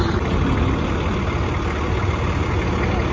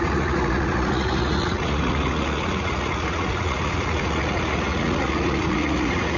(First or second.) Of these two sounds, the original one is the first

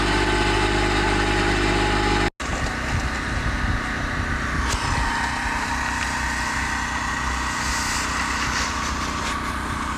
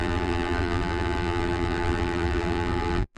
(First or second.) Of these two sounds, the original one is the first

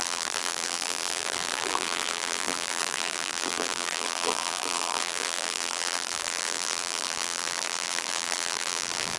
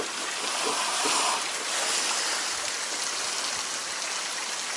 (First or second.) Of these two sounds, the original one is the second